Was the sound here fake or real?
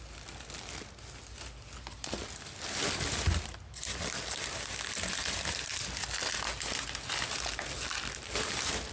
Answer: real